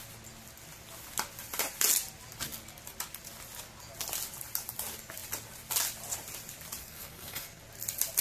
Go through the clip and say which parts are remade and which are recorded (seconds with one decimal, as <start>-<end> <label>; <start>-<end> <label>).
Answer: 0.0-6.8 recorded; 6.8-7.6 remade; 7.6-8.2 recorded